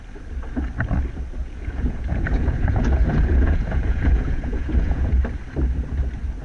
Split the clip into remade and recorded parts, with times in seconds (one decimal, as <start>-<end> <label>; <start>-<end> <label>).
0.0-1.4 recorded; 1.4-5.2 remade; 5.2-6.4 recorded